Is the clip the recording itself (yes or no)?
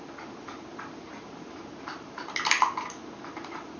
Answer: yes